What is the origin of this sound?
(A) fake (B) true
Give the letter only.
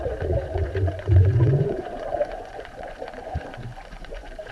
A